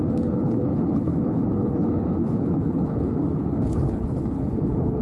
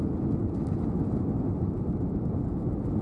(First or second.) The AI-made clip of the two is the first